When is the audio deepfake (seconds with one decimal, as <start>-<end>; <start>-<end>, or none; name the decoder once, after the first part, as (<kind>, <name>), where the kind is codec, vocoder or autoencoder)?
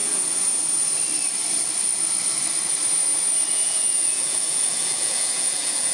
3.5-5.9 (vocoder, Vocos)